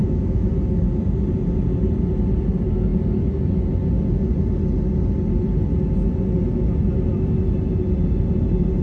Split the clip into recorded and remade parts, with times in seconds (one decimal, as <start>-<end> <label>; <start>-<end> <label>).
0.0-0.5 remade; 0.5-8.8 recorded